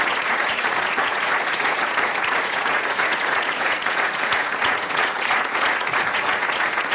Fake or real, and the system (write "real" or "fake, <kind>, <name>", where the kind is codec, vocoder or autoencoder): fake, vocoder, Vocos